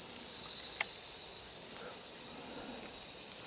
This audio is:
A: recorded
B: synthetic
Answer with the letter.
A